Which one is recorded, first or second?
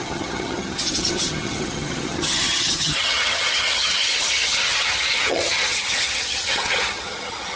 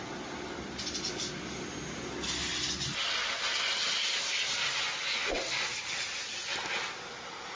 second